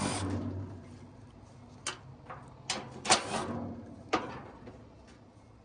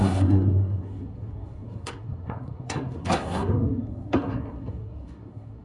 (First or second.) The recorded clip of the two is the first